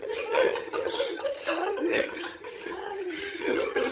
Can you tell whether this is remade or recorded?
remade